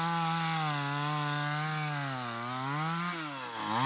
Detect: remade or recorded recorded